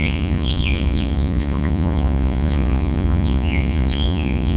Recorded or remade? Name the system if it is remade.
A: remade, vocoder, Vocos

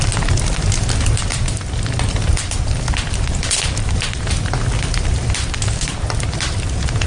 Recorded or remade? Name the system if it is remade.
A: recorded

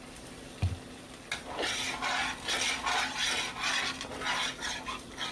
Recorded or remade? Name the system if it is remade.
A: recorded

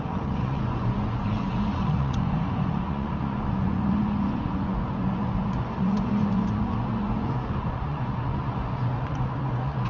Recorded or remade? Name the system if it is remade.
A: remade, vocoder, Vocos